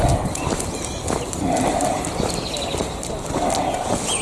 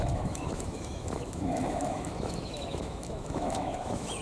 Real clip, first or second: first